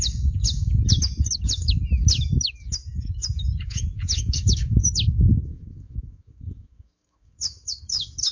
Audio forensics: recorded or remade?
remade